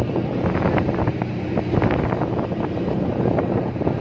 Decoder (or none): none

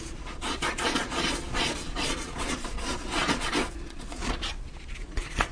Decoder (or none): vocoder, Vocos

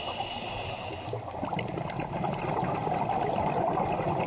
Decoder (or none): none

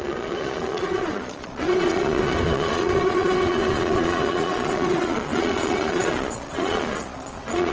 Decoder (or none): vocoder, Vocos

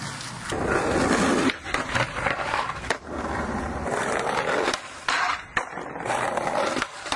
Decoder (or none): none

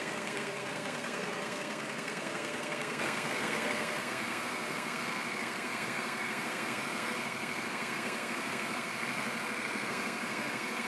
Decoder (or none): codec, SNAC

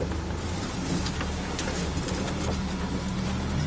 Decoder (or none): none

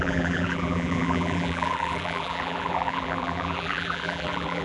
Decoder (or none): vocoder, BigVGAN v2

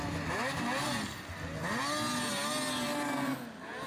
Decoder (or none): none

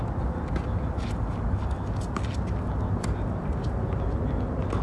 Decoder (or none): none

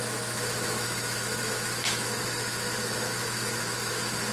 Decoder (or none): autoencoder, DAC-VAE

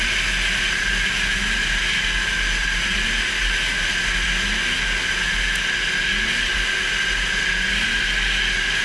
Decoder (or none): none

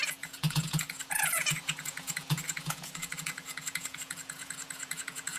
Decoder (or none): vocoder, Vocos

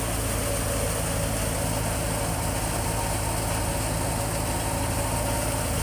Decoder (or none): none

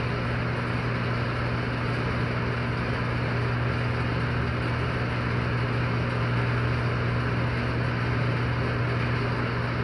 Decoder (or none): none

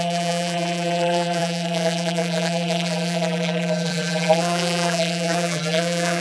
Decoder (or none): vocoder, BigVGAN v2